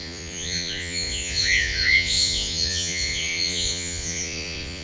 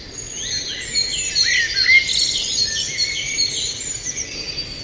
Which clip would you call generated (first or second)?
first